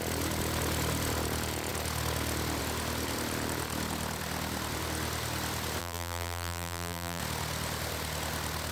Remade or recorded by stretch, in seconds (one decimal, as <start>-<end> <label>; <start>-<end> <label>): 0.0-5.8 recorded; 5.8-7.2 remade; 7.2-8.7 recorded